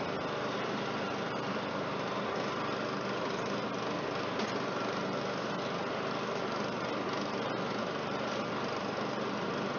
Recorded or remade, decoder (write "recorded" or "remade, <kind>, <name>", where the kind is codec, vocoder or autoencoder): recorded